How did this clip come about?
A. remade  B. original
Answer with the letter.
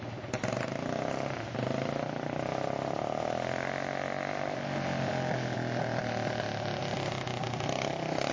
B